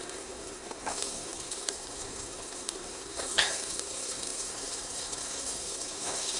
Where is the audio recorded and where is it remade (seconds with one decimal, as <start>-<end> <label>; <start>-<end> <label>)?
0.0-6.4 remade